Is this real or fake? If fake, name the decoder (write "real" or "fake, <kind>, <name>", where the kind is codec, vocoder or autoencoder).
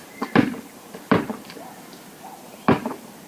fake, vocoder, BigVGAN v2